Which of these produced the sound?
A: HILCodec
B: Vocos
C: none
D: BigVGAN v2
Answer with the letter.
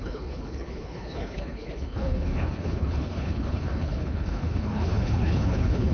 A